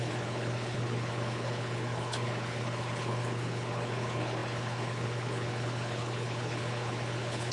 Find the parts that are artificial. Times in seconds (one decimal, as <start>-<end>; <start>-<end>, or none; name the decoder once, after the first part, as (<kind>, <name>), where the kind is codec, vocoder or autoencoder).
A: 0.0-7.5 (codec, HILCodec)

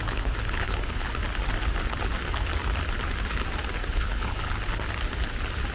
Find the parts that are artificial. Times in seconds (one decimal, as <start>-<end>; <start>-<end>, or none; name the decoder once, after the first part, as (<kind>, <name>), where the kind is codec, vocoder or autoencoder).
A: 0.0-1.1 (codec, HILCodec); 3.8-4.5

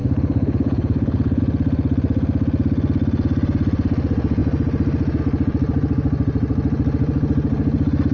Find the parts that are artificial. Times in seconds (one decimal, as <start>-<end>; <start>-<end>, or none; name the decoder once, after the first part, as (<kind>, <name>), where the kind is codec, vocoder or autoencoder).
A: 0.0-1.4 (codec, HILCodec)

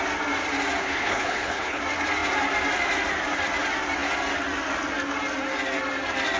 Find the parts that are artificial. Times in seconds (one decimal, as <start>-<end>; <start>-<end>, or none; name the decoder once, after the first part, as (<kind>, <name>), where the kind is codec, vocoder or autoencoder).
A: 0.8-1.8 (codec, HILCodec)

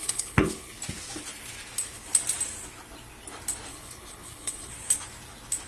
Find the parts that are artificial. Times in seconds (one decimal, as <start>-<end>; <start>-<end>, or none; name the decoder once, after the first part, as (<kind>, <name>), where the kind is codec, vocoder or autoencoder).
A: 0.0-0.8 (codec, HILCodec); 3.7-4.7

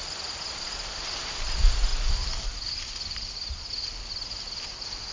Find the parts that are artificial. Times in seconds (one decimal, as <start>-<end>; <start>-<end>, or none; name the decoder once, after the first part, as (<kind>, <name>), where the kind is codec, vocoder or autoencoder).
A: none

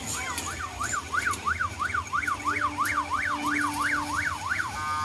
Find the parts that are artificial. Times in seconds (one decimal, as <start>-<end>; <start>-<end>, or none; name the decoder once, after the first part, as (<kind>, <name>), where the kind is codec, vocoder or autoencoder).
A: none